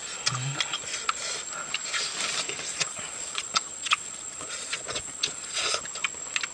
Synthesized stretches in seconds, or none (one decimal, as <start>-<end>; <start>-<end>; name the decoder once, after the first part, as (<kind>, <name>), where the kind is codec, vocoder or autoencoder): 2.7-5.7 (vocoder, Vocos)